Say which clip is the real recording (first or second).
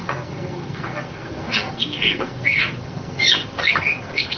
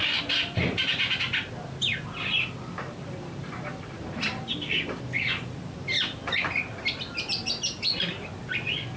second